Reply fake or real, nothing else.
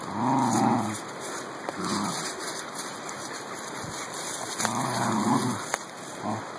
real